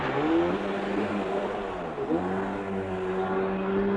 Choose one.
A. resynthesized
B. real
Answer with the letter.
B